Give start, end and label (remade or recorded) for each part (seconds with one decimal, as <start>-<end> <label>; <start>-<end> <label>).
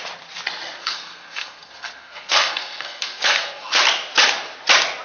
0.0-0.8 recorded; 0.8-3.8 remade; 3.8-5.0 recorded